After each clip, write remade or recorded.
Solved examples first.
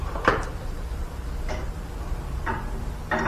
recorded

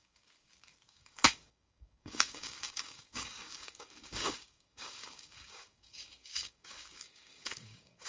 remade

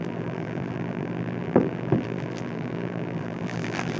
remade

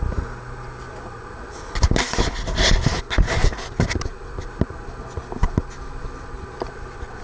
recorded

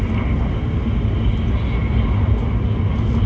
recorded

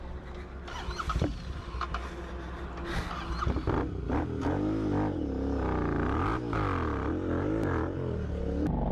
recorded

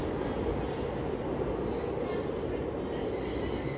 recorded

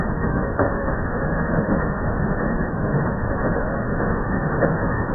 remade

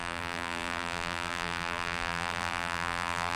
remade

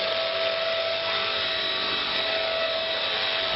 recorded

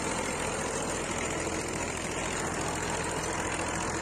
recorded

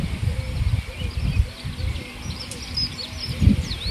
recorded